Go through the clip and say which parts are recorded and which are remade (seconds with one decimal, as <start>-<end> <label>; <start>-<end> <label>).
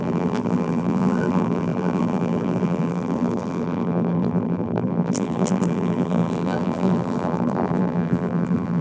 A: 0.0-8.8 remade